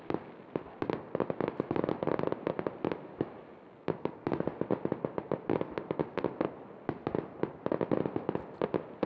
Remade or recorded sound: recorded